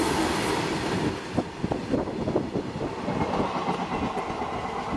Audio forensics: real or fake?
real